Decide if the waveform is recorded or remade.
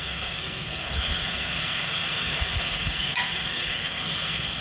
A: remade